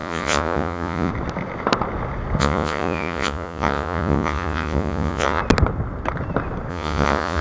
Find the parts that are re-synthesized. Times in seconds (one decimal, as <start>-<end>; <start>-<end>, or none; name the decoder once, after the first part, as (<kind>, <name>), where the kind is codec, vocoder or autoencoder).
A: 0.0-1.1 (vocoder, Vocos); 2.4-5.4; 6.7-7.4